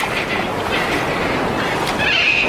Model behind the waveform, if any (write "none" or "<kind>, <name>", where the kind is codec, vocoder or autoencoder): none